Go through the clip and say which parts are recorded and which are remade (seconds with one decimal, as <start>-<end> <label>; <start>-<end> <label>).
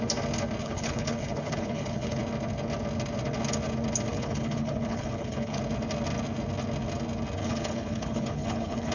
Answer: 0.0-0.6 recorded; 0.6-2.2 remade; 2.2-4.1 recorded; 4.1-5.6 remade; 5.6-7.4 recorded; 7.4-8.9 remade